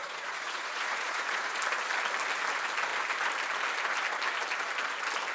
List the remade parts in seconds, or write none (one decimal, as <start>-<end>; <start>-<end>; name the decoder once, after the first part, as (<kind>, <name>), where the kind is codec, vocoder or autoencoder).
0.0-1.6 (vocoder, Vocos)